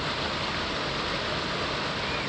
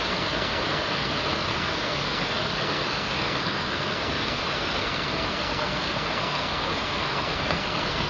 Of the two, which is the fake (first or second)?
second